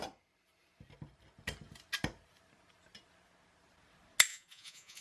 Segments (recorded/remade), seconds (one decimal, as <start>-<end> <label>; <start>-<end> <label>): 0.0-4.3 recorded; 4.3-5.0 remade